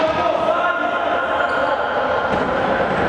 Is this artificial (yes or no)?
no